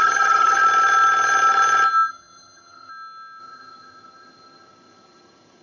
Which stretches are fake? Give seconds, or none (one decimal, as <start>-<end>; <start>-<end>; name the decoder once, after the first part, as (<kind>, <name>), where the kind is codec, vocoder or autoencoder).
0.0-0.6 (vocoder, HiFi-GAN); 2.1-2.9; 3.4-5.6